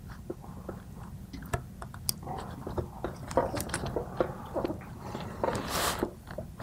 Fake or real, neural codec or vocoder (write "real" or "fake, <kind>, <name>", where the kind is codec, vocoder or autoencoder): real